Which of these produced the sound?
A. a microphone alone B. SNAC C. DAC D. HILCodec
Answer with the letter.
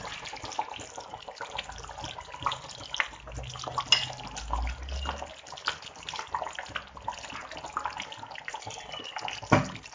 A